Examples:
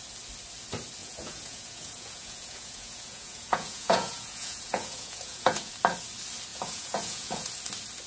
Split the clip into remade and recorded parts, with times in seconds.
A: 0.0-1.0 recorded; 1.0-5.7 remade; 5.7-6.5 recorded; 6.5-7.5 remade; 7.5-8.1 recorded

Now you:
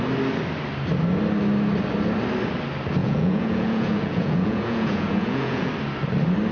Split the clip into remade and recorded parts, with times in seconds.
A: 0.0-3.0 recorded; 3.0-5.7 remade; 5.7-6.5 recorded

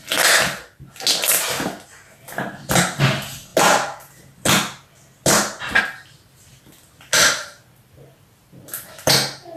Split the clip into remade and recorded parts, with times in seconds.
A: 0.0-9.6 recorded

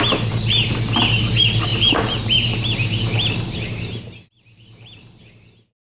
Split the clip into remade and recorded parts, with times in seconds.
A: 0.0-1.7 recorded; 1.7-5.2 remade; 5.2-6.0 recorded

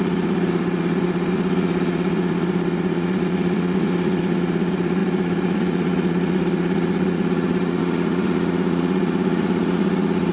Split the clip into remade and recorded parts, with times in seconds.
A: 0.0-10.3 remade